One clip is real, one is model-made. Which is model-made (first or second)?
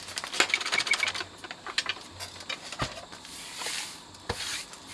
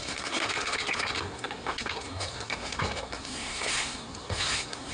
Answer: second